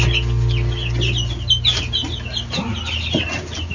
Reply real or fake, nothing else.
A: real